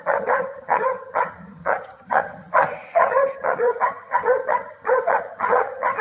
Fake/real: fake